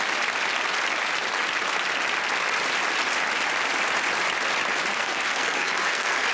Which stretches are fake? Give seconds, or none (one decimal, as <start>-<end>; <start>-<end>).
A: 4.9-6.3